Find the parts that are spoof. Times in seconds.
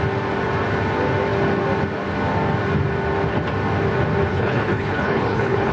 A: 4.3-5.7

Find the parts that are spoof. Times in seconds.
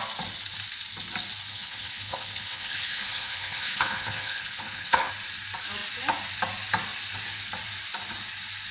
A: 1.5-5.1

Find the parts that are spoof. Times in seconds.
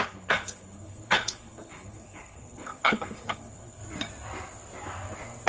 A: 0.0-3.8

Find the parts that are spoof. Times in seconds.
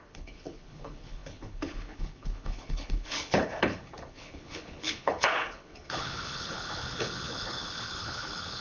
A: 0.0-8.6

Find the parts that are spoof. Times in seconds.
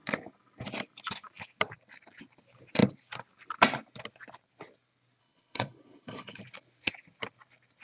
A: 5.2-6.4